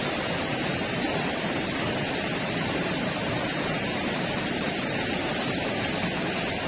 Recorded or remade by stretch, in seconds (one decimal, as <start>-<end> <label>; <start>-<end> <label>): 0.0-0.7 recorded; 0.7-4.7 remade; 4.7-6.7 recorded